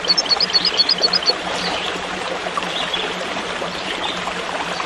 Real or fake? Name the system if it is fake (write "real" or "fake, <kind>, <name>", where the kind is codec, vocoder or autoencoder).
fake, vocoder, BigVGAN v2